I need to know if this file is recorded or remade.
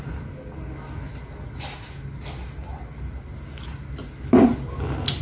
recorded